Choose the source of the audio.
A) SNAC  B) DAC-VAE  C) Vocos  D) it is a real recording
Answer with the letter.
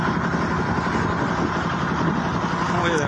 D